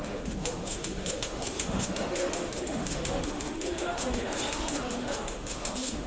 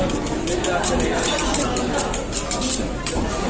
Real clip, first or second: second